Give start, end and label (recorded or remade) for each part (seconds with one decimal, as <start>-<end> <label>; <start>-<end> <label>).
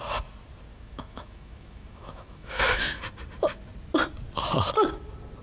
0.0-0.7 recorded; 0.7-3.0 remade; 3.0-5.4 recorded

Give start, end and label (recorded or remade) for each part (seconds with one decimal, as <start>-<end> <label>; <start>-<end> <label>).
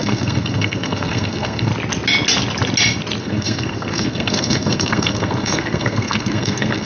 0.0-1.7 remade; 1.7-3.2 recorded; 3.2-6.9 remade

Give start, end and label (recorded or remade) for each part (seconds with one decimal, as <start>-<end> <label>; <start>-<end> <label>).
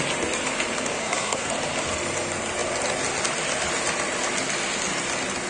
0.0-1.0 recorded; 1.0-1.5 remade; 1.5-5.5 recorded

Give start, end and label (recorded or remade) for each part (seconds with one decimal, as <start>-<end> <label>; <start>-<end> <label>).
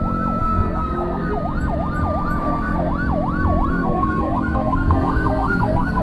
0.0-0.4 recorded; 0.4-1.3 remade; 1.3-2.4 recorded; 2.4-2.9 remade; 2.9-3.7 recorded; 3.7-6.0 remade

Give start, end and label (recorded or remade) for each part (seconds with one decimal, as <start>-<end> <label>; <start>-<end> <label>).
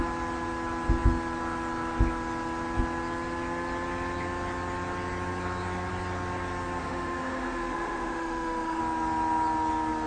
0.0-6.8 recorded; 6.8-8.8 remade; 8.8-10.1 recorded